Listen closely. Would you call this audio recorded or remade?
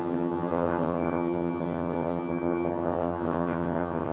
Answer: remade